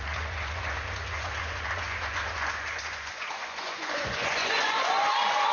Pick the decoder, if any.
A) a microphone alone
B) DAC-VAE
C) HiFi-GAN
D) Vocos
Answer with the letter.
D